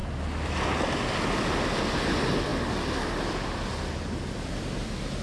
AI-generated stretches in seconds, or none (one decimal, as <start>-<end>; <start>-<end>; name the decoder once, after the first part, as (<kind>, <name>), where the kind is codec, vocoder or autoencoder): none